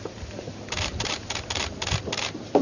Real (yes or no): no